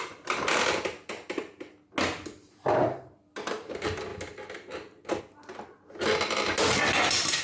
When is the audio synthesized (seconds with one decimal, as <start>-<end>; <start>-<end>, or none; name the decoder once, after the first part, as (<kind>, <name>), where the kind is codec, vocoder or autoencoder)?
none

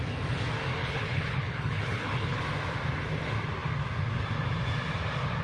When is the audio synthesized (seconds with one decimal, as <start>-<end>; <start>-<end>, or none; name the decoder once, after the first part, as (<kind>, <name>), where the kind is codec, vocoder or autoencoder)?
0.8-2.4 (codec, HILCodec)

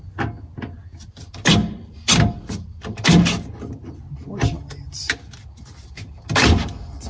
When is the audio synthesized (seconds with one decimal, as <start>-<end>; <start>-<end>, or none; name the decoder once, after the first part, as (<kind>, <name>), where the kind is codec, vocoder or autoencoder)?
none

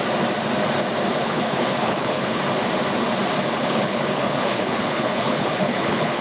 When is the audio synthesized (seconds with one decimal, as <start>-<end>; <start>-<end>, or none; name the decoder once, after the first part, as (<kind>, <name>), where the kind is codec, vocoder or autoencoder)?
1.2-2.4 (codec, HILCodec); 3.6-6.2

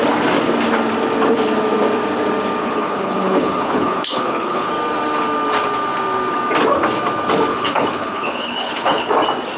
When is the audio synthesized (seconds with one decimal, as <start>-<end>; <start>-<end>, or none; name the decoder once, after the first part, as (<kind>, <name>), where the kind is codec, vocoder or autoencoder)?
2.6-4.7 (codec, HILCodec); 7.5-9.1

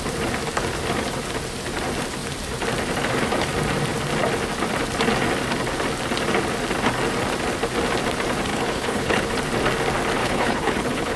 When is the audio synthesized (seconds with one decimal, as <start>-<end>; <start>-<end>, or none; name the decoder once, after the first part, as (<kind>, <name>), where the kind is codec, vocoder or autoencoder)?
8.5-9.3 (codec, HILCodec); 10.2-11.2

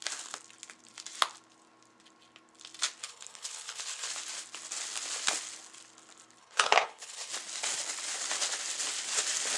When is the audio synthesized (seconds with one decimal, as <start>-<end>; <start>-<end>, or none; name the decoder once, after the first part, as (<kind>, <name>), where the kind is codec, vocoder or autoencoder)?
3.0-4.1 (codec, HILCodec); 6.4-7.3

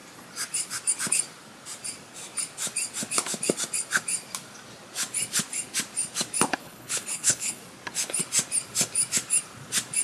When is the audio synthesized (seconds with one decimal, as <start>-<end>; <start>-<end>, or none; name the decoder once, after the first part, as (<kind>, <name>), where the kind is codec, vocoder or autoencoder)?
6.6-7.6 (codec, HILCodec)